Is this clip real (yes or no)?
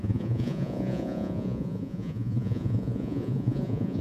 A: no